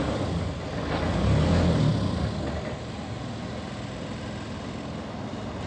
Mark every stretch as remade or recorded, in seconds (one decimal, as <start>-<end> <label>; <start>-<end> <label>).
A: 0.0-5.7 recorded